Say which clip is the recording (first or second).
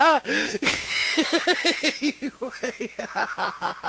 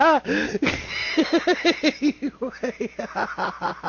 second